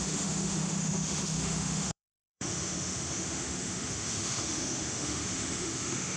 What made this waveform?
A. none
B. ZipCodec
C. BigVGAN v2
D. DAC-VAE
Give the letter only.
D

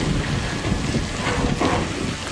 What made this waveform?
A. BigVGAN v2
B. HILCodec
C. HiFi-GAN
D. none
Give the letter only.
D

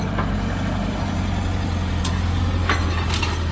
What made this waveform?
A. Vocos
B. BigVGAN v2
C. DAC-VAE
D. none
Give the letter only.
D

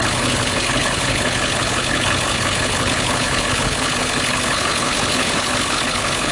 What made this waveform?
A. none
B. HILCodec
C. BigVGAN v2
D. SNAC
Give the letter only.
B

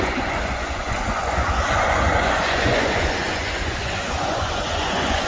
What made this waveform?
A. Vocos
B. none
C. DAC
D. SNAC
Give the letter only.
A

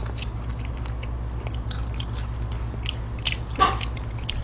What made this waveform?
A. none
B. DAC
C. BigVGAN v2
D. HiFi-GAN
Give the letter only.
A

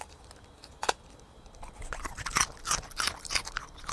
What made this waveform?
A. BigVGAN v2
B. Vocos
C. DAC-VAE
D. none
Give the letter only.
D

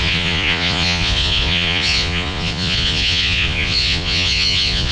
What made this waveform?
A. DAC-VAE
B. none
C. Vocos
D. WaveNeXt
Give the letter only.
C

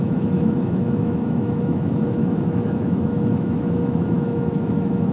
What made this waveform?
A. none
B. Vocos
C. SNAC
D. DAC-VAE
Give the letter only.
D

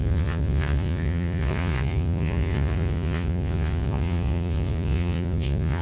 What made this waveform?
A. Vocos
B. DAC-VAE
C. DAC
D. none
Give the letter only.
A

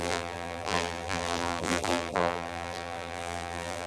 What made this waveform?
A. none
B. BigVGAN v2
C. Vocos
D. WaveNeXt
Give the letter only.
B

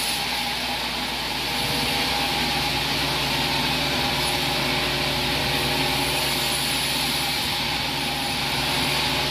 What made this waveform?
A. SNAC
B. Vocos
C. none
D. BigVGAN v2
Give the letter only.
C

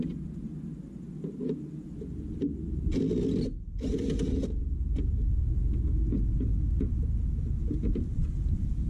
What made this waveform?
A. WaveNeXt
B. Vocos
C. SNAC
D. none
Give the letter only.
D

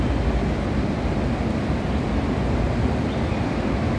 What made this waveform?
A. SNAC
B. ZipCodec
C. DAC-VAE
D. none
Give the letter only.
D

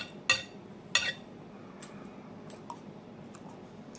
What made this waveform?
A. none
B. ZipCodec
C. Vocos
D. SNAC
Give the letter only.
A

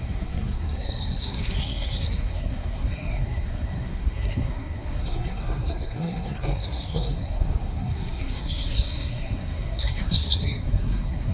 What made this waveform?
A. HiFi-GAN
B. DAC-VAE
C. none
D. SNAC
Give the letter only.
D